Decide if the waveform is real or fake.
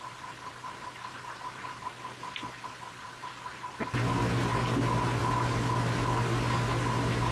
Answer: real